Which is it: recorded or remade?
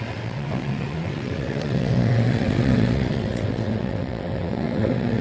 remade